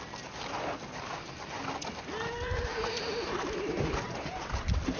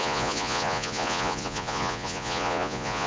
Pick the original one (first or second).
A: first